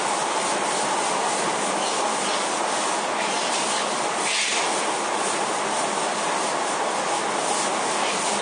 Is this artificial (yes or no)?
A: no